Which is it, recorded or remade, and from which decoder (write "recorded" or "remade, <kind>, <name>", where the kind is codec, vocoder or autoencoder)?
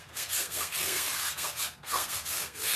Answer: remade, codec, SNAC